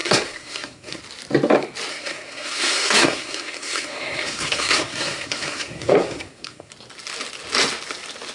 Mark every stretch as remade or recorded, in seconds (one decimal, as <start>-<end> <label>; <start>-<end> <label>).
0.0-1.0 remade; 1.0-1.9 recorded; 1.9-6.7 remade; 6.7-8.3 recorded